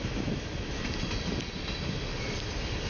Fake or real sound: real